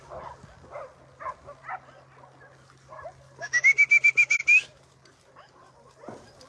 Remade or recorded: recorded